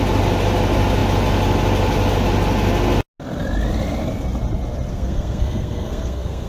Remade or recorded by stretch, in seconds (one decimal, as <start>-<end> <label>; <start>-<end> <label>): 0.0-4.9 recorded; 4.9-6.5 remade